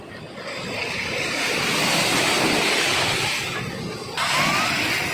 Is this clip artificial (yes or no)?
no